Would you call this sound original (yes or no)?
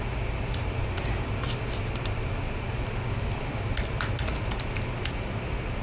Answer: yes